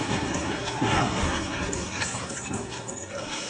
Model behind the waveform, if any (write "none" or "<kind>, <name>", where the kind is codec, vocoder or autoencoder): codec, SNAC